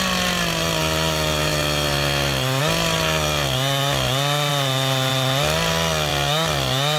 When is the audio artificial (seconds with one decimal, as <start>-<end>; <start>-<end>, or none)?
none